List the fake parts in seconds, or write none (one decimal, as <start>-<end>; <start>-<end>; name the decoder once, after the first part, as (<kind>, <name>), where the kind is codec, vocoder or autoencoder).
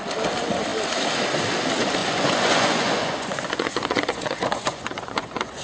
2.0-5.6 (vocoder, Vocos)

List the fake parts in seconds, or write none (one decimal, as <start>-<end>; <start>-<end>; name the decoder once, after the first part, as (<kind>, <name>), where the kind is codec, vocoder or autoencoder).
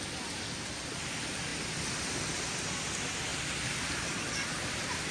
none